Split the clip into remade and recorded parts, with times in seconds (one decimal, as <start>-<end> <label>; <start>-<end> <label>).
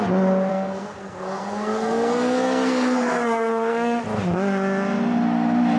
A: 0.0-0.5 recorded; 0.5-4.0 remade; 4.0-5.8 recorded